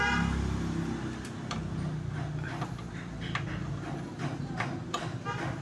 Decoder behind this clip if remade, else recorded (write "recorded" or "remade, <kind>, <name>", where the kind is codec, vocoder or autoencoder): recorded